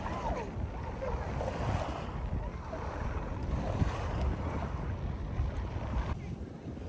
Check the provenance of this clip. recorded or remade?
recorded